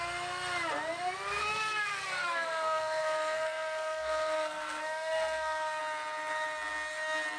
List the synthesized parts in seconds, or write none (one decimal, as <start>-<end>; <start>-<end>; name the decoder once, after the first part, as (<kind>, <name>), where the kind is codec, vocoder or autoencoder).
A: 1.4-5.8 (codec, SNAC)